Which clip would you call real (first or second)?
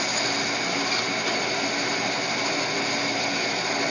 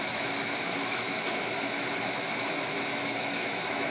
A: first